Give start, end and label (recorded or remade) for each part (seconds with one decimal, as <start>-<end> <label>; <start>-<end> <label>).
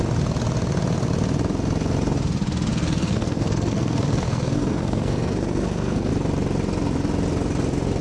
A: 0.0-2.7 recorded; 2.7-6.1 remade; 6.1-8.0 recorded